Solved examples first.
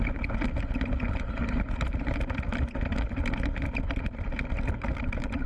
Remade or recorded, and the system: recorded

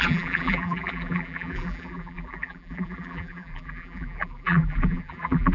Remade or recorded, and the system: remade, vocoder, BigVGAN v2